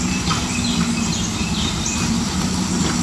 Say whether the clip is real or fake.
real